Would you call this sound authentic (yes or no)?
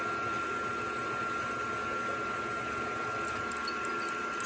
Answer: yes